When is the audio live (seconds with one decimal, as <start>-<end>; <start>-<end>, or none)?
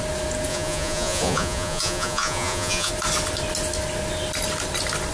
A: 0.0-0.5; 2.9-5.1